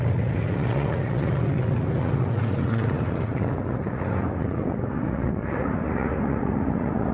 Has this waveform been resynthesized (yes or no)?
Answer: yes